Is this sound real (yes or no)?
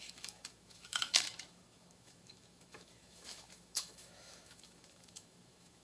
no